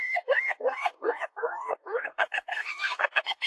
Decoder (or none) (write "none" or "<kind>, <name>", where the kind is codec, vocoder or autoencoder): codec, DAC